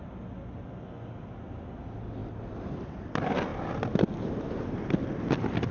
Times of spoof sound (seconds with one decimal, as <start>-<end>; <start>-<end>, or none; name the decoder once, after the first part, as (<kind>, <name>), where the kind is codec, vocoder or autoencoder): 2.2-3.1 (vocoder, BigVGAN v2)